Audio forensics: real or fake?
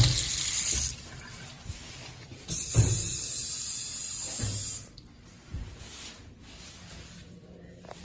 real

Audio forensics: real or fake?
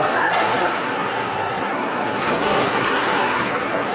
fake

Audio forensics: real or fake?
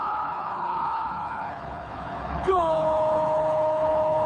fake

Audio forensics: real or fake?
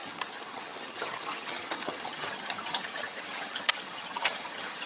fake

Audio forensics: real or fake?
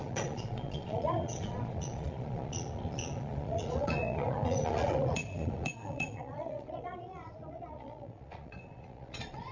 fake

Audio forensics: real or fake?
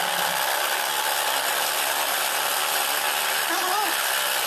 real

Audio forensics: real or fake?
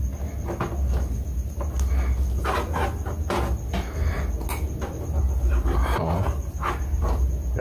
real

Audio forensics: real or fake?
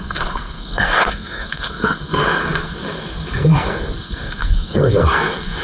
fake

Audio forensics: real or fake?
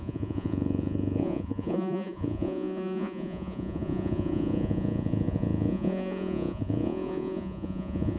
fake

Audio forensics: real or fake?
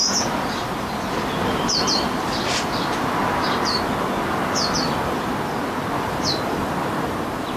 real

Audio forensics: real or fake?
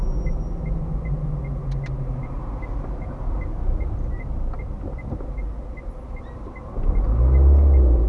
real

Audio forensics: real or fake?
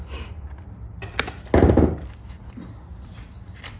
real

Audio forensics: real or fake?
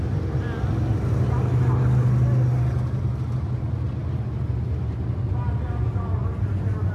real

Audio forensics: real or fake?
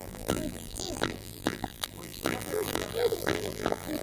fake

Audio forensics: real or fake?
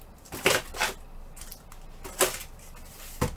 real